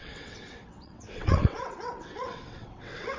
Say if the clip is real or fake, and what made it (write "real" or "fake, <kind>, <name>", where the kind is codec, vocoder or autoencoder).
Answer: fake, vocoder, WaveNeXt